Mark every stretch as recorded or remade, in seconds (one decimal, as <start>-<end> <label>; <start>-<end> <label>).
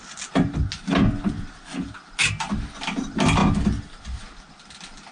0.0-5.1 recorded